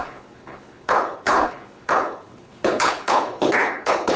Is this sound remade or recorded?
remade